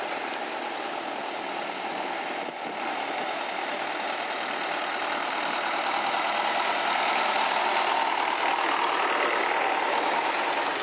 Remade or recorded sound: recorded